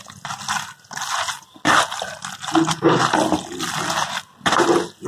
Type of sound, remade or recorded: recorded